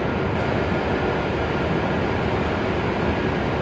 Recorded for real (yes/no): yes